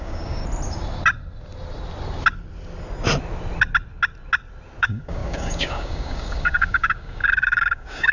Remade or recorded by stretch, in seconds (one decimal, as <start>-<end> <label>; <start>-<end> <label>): 0.0-0.4 remade; 0.4-4.8 recorded; 4.8-8.1 remade